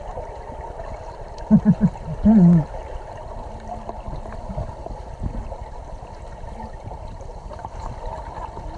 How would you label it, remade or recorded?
recorded